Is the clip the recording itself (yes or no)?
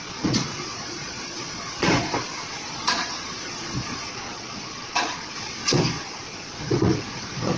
no